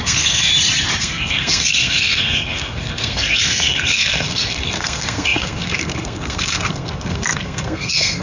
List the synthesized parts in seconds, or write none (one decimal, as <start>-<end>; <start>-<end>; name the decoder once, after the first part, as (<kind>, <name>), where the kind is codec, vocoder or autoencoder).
0.0-0.5 (codec, SNAC); 1.0-8.2